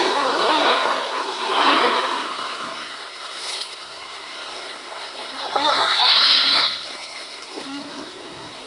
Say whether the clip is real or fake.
fake